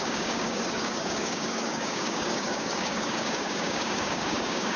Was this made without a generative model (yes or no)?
no